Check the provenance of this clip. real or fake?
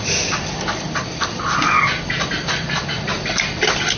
real